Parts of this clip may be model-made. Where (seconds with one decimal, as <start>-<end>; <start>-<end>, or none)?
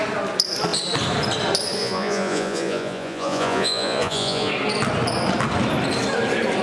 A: 1.8-4.5